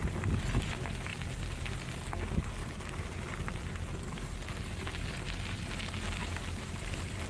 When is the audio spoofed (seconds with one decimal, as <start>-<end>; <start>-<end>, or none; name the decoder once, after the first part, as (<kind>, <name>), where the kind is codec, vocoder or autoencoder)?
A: 6.2-6.8 (autoencoder, DAC-VAE)